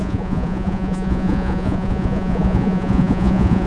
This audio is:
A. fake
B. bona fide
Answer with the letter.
A